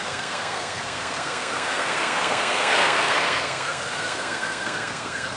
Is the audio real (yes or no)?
no